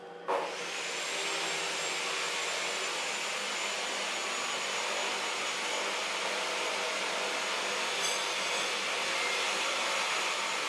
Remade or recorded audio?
recorded